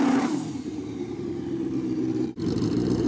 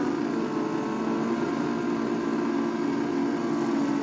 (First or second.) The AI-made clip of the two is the first